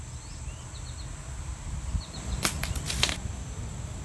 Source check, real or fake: real